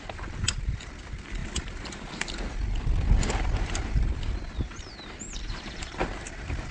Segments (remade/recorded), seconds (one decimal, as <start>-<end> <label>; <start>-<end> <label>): 0.0-6.7 recorded